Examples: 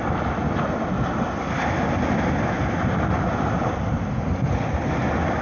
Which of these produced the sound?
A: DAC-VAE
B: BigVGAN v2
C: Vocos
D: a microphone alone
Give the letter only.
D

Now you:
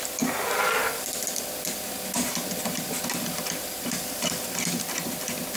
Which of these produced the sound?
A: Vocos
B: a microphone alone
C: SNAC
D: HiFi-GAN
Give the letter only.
B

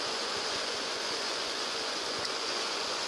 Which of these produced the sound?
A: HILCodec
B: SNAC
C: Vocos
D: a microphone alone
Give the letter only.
C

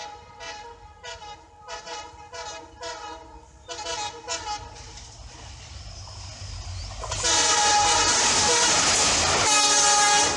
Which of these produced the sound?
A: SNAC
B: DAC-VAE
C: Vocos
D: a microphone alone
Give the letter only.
D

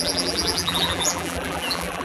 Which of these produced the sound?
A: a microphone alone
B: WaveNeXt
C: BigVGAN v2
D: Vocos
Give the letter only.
C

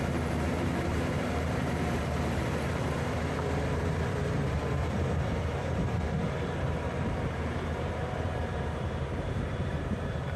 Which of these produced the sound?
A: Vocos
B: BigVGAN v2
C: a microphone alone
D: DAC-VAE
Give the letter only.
B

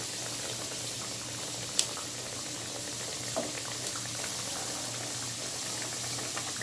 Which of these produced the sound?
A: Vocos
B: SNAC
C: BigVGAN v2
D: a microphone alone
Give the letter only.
D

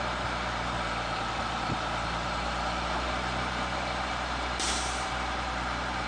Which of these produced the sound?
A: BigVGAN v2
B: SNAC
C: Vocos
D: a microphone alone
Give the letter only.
A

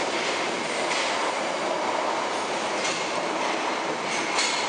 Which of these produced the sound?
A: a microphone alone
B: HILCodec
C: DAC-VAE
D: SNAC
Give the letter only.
A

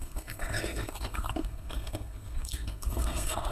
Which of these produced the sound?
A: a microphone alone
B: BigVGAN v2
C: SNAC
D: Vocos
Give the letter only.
C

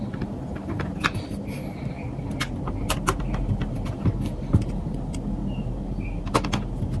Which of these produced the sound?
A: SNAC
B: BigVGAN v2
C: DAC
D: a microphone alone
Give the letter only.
D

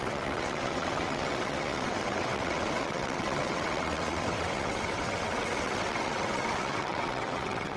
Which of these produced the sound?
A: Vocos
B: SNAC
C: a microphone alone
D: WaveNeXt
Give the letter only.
D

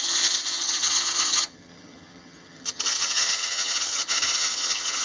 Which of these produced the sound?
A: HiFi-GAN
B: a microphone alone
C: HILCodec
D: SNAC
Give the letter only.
A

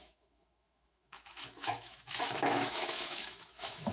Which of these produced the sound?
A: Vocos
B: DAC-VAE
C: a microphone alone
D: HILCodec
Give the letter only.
B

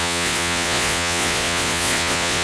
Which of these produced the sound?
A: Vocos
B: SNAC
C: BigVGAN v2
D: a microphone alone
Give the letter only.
A